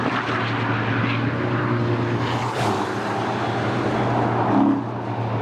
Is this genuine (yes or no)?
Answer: yes